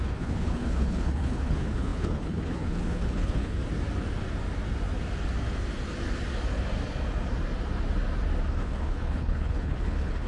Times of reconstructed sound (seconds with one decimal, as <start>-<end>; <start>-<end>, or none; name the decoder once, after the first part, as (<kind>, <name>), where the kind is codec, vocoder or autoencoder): 0.0-3.6 (codec, HILCodec); 8.5-10.3